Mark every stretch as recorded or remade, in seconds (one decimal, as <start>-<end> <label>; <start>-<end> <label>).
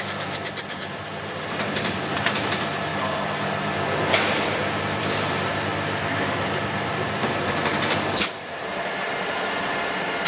0.0-2.9 remade; 2.9-4.8 recorded; 4.8-10.3 remade